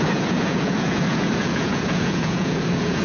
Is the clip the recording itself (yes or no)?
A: no